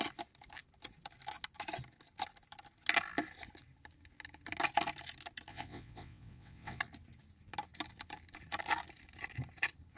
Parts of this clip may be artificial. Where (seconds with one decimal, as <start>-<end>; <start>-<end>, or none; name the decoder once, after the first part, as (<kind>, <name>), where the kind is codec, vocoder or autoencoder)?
5.5-6.8 (vocoder, WaveNeXt)